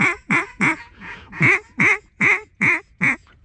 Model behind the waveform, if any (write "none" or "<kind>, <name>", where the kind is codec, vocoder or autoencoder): vocoder, Vocos